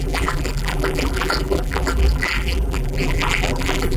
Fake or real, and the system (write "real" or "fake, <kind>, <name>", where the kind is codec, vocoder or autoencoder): fake, vocoder, BigVGAN v2